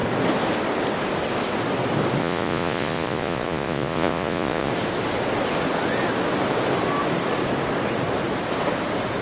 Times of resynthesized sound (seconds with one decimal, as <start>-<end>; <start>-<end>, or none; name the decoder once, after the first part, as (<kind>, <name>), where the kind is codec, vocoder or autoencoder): 2.2-4.7 (vocoder, Vocos)